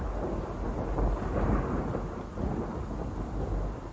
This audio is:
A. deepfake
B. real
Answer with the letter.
B